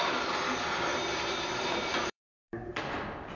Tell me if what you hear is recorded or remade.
remade